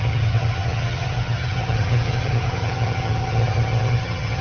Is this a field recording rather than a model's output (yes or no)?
no